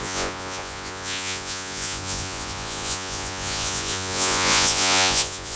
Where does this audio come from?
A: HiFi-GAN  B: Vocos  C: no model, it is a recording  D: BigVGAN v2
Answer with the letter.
B